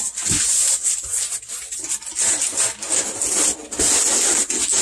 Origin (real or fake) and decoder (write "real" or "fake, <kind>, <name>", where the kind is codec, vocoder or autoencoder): real